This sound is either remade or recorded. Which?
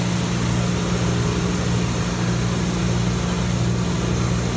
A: recorded